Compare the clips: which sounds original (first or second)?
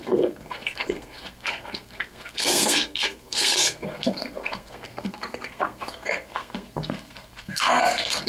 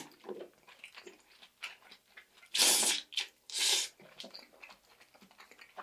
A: second